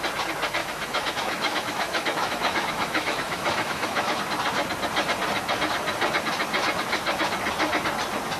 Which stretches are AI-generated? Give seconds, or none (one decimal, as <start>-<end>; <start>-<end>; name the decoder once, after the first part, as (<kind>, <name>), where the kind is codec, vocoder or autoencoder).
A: 0.6-4.2 (autoencoder, DAC-VAE)